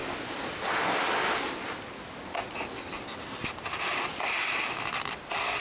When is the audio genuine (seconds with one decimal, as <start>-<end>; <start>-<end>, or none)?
0.0-5.6